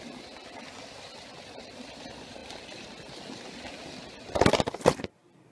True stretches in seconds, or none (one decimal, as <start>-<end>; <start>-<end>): 2.4-3.6